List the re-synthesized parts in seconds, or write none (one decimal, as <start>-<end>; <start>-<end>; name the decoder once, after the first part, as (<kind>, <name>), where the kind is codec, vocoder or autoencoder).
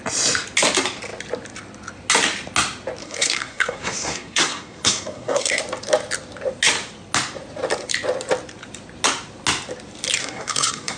3.0-5.6 (codec, SNAC); 10.2-11.0